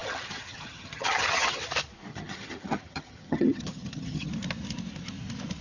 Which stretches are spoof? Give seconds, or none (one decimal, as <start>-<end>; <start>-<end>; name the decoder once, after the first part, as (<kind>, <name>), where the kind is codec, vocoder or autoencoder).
0.0-1.6 (vocoder, HiFi-GAN); 2.1-4.3